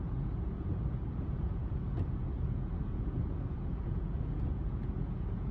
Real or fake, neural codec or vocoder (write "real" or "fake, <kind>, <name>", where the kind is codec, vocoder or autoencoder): fake, vocoder, Vocos